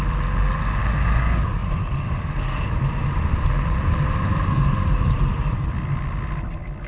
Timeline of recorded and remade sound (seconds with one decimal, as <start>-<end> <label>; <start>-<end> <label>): 0.0-1.6 recorded; 1.6-5.7 remade; 5.7-6.9 recorded